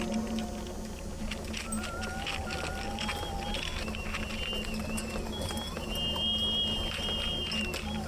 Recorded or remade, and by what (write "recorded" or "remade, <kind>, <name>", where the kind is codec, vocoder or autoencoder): recorded